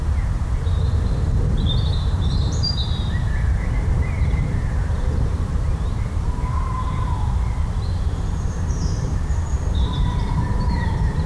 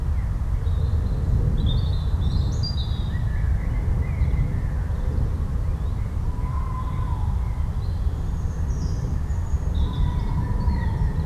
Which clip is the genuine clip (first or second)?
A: second